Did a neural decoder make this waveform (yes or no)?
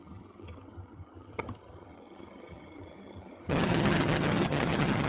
yes